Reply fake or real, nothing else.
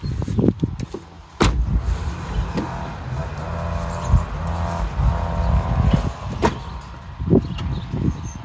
real